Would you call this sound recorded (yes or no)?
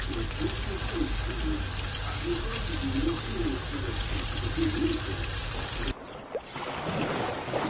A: yes